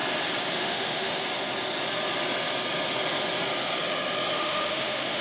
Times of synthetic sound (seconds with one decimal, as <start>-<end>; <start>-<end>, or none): 0.5-1.2; 4.3-5.2